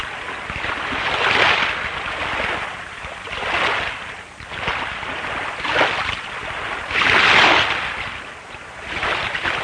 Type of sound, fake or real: real